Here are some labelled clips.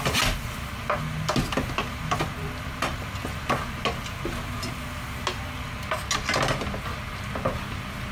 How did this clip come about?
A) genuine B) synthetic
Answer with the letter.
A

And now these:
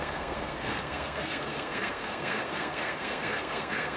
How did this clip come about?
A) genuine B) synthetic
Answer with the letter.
B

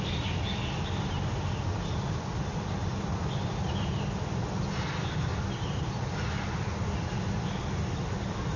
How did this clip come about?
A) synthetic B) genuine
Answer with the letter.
B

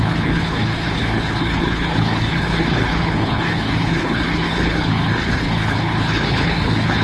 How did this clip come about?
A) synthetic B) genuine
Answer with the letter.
A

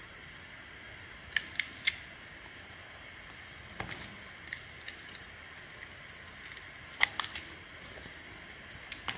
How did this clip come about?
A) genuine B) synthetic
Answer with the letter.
A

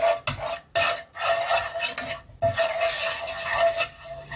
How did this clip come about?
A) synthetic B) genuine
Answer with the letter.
B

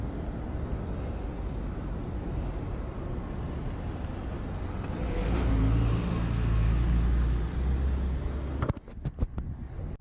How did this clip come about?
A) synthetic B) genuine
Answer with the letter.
B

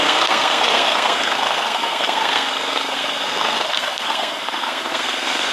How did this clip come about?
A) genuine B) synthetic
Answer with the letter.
B